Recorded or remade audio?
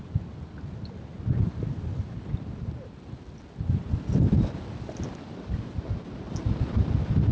recorded